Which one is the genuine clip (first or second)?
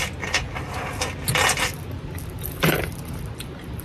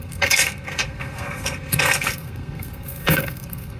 first